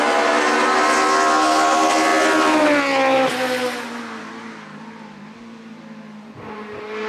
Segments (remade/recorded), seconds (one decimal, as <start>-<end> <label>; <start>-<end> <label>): 0.0-7.1 recorded